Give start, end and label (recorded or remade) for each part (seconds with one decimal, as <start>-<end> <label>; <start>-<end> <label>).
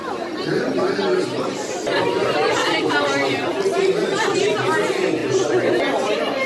0.0-6.5 recorded